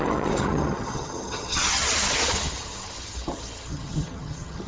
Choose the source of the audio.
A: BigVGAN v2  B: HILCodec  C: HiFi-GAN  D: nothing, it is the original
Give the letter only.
C